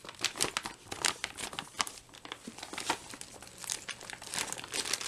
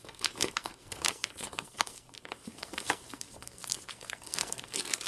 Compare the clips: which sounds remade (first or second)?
second